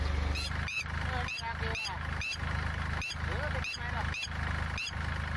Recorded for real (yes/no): yes